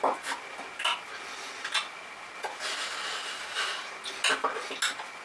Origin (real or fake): real